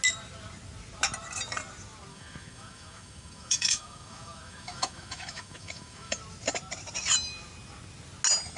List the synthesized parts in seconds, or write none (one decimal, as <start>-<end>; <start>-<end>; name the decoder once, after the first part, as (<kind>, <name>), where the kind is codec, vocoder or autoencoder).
2.1-6.2 (autoencoder, DAC-VAE)